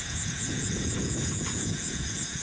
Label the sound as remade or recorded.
remade